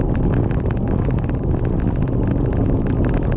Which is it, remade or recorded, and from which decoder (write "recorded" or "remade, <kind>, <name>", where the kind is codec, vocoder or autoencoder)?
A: recorded